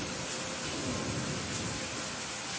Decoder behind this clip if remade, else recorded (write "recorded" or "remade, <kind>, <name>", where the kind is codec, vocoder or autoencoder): recorded